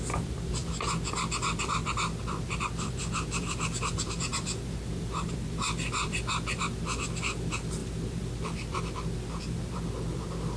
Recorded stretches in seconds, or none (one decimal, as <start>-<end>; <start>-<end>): 0.6-1.6